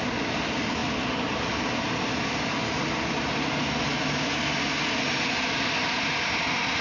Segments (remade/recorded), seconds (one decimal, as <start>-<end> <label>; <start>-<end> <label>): 0.0-6.8 recorded